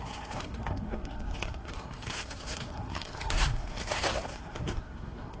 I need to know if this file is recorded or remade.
remade